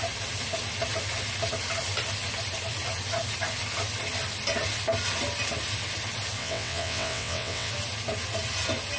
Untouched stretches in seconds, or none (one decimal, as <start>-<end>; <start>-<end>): 0.0-6.4; 7.7-9.0